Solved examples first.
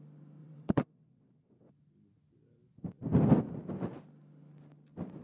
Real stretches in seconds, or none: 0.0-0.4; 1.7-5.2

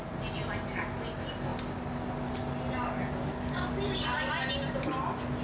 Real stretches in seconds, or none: 0.0-5.4

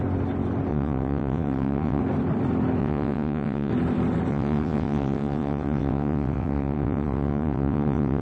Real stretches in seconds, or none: 0.0-0.7; 2.0-2.8; 3.7-4.3

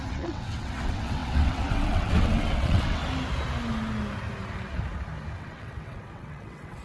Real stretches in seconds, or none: 3.0-5.4